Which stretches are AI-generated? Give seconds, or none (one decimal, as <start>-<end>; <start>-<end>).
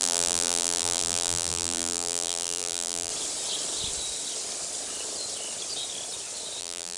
0.0-3.1; 6.6-7.0